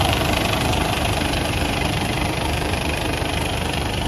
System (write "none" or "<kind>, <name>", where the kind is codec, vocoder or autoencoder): vocoder, BigVGAN v2